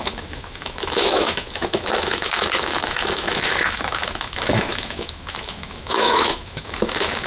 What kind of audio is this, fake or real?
fake